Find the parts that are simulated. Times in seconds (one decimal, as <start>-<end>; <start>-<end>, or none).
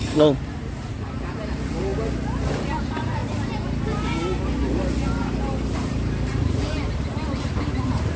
0.0-1.9; 2.5-3.2; 5.2-8.2